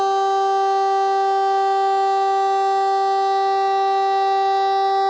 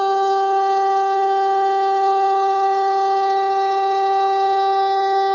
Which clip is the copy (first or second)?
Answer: second